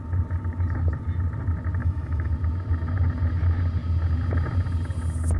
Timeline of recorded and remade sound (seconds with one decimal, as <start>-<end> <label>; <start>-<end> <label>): 0.0-1.8 recorded; 1.8-2.3 remade; 2.3-5.4 recorded